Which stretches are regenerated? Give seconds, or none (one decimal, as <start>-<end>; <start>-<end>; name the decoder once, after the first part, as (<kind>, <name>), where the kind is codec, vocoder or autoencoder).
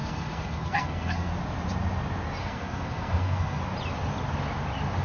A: 0.0-1.3 (codec, SNAC); 2.4-3.6